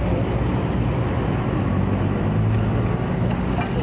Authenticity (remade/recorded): recorded